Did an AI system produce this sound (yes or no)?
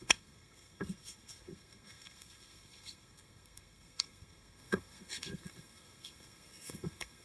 yes